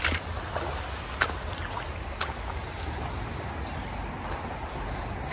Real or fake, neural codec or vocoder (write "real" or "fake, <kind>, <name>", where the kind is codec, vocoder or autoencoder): real